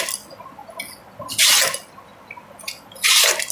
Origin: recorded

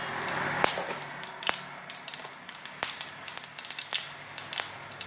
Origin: recorded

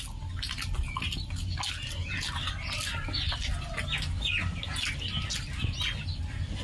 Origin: recorded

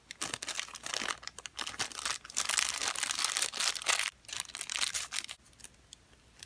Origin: recorded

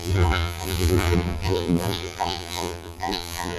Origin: remade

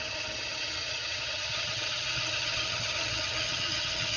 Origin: remade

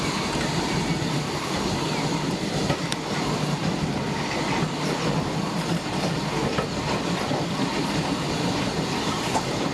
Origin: recorded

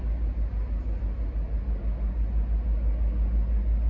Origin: recorded